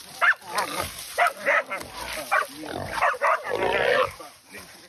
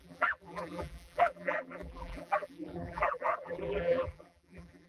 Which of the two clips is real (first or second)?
first